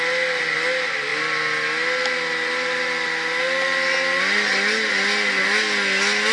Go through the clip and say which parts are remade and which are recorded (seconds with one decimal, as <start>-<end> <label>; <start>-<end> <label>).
0.0-6.3 recorded